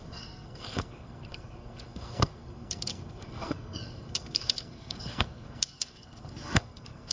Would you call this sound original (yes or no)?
no